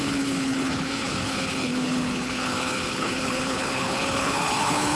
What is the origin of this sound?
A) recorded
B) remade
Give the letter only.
B